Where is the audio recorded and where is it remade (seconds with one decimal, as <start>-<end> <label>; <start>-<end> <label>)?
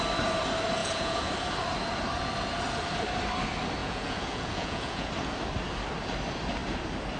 0.0-0.8 recorded; 0.8-1.3 remade; 1.3-3.8 recorded; 3.8-5.1 remade; 5.1-7.2 recorded